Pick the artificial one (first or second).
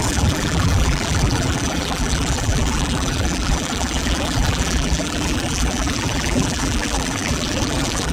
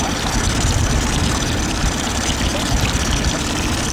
first